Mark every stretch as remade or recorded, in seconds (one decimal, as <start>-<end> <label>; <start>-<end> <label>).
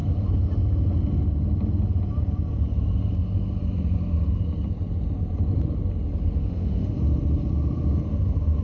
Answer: 0.0-6.4 recorded; 6.4-7.0 remade; 7.0-8.6 recorded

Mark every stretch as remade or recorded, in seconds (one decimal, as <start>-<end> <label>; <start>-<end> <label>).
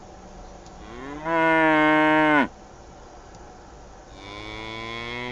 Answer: 0.0-5.3 recorded